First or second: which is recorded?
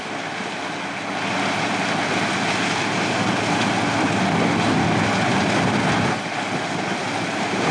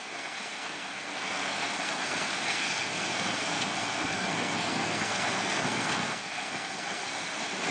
first